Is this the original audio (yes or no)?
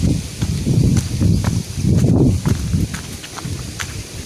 yes